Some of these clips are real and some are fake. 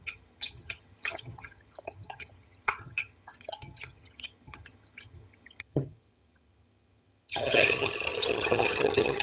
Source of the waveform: fake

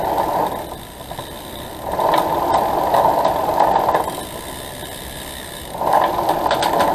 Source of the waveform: real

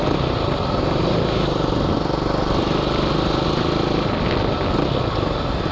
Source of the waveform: real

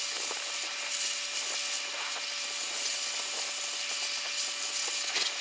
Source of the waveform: real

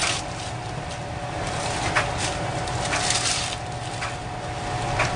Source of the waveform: real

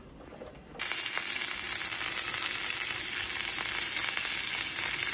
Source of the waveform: real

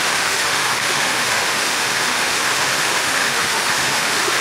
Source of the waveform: fake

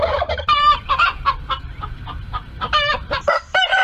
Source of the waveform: fake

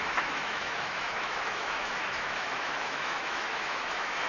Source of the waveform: fake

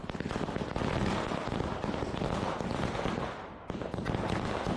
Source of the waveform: fake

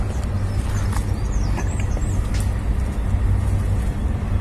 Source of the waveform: real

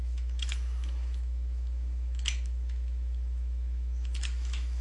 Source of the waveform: fake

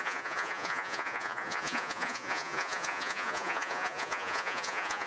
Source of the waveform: fake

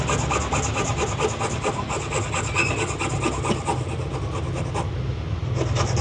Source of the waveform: real